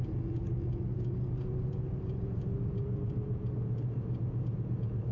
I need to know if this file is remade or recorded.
remade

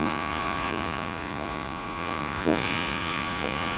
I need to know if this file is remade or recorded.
remade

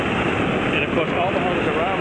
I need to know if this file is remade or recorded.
recorded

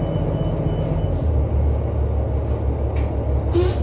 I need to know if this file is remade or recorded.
recorded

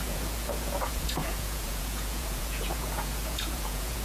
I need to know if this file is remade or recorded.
remade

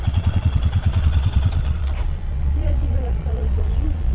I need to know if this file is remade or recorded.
remade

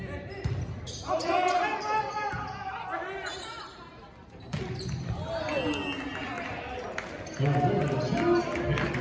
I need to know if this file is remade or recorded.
recorded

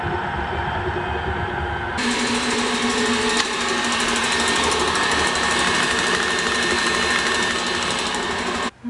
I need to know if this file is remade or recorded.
recorded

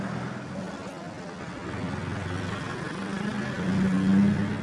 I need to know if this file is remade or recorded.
recorded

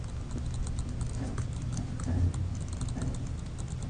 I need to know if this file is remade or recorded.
recorded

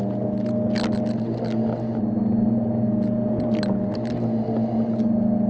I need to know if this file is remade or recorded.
recorded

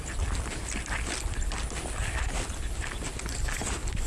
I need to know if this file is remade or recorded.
recorded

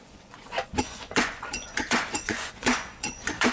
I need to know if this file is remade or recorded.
remade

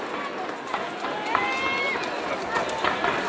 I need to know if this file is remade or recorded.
recorded